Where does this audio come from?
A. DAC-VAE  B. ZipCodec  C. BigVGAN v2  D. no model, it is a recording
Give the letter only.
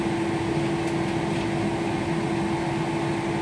D